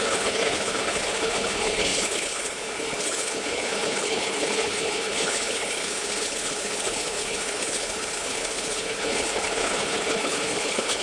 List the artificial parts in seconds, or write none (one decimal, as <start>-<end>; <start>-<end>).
0.0-11.0